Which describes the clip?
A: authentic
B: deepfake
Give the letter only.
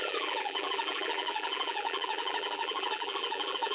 B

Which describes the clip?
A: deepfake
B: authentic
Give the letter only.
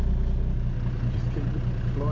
B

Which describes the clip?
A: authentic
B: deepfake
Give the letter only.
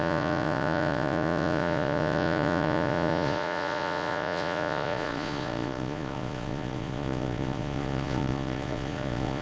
B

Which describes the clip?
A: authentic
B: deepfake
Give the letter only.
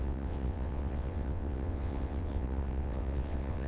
B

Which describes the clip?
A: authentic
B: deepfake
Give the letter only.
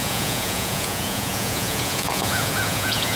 B